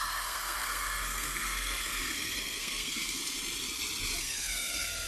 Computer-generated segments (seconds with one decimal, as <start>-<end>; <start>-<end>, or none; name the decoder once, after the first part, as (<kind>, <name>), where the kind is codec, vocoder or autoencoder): 0.0-3.2 (codec, SNAC); 4.2-5.1